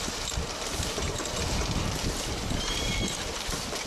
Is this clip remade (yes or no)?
yes